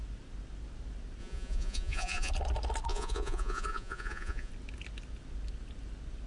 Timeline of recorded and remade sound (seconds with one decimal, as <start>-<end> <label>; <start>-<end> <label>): 0.0-1.2 recorded; 1.2-2.3 remade; 2.3-2.9 recorded; 2.9-4.5 remade; 4.5-6.3 recorded